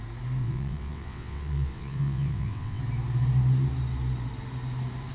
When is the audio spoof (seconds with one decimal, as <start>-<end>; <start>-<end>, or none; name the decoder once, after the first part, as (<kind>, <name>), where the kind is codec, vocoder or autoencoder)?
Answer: 0.4-2.8 (vocoder, WaveNeXt)